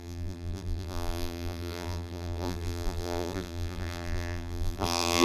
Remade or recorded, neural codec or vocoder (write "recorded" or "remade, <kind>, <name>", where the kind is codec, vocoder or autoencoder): remade, vocoder, BigVGAN v2